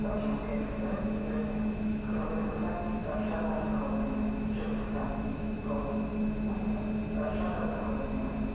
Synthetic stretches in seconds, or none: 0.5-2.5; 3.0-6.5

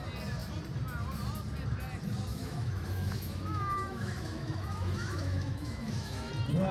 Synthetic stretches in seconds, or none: 2.3-6.3